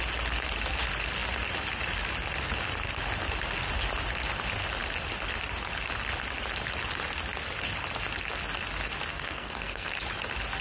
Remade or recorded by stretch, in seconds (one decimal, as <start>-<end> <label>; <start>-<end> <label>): 0.0-9.1 recorded; 9.1-9.9 remade; 9.9-10.6 recorded